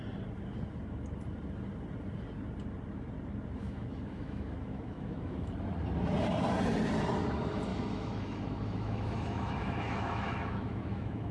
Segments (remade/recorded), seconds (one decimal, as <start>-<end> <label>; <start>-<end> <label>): 0.0-3.6 recorded; 3.6-5.5 remade; 5.5-7.7 recorded; 7.7-11.3 remade